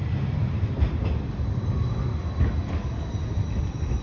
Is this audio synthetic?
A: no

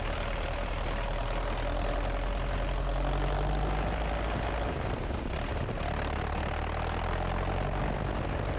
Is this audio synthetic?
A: no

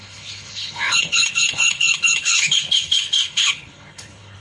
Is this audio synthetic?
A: yes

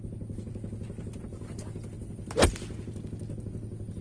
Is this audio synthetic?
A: no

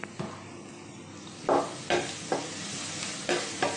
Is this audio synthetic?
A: no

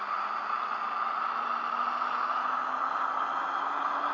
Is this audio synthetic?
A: no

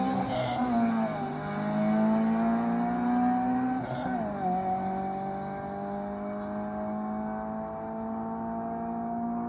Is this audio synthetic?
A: no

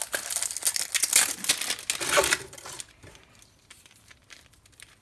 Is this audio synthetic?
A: no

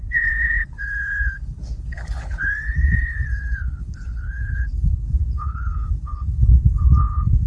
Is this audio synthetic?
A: yes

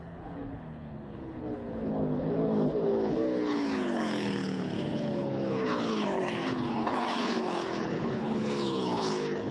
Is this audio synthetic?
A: yes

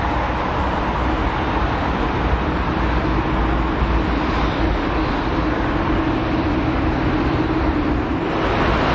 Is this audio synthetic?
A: no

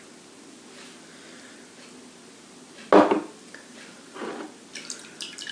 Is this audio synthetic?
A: no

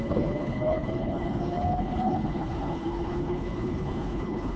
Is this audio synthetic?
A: yes